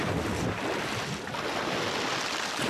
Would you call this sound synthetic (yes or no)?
no